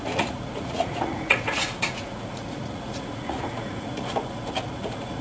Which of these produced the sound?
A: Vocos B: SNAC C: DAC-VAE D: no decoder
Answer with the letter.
A